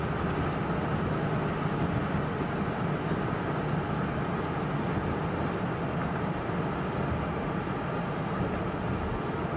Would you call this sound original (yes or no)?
yes